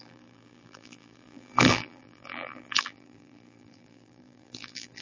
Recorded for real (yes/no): no